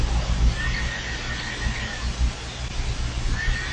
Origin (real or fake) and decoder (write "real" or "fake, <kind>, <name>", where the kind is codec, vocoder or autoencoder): real